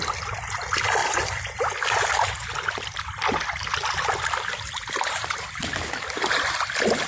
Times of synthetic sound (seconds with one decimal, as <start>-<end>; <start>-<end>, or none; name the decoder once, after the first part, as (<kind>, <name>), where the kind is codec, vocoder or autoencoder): none